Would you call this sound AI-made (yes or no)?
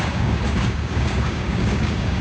yes